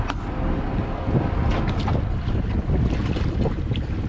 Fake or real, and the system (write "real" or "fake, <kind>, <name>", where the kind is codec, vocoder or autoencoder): real